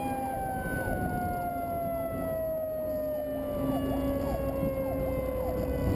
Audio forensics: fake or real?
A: real